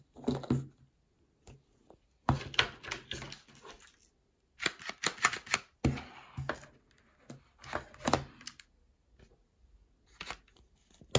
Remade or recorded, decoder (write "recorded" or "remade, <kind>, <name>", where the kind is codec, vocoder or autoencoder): recorded